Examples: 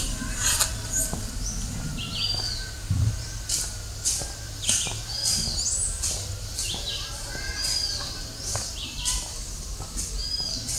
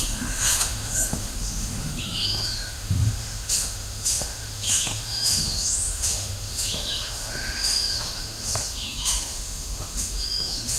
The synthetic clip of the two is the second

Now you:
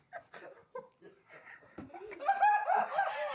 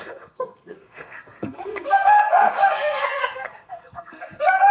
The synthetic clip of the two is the second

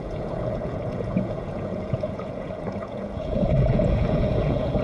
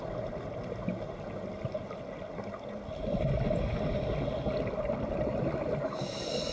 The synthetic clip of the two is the first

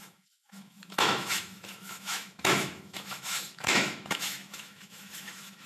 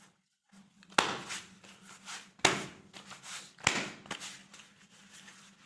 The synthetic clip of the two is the first